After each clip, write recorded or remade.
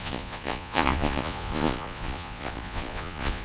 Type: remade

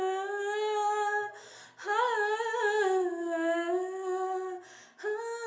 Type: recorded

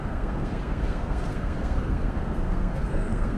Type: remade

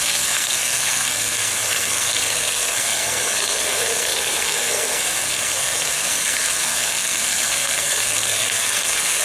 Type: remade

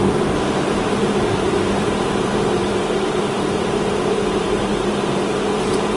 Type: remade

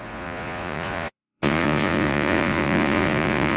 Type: remade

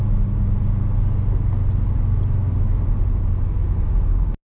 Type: recorded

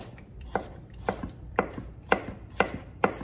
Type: remade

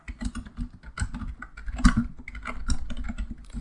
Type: recorded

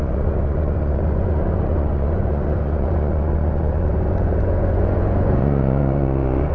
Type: remade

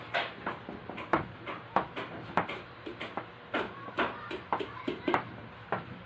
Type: remade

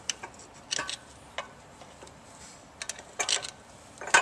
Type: recorded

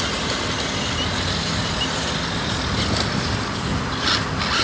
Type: recorded